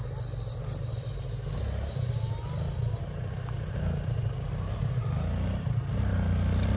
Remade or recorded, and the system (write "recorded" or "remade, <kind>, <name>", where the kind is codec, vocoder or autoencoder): recorded